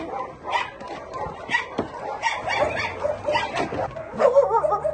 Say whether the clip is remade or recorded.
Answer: recorded